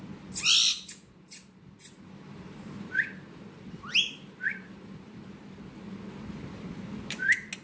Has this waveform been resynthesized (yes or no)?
no